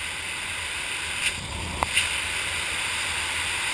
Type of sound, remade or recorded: recorded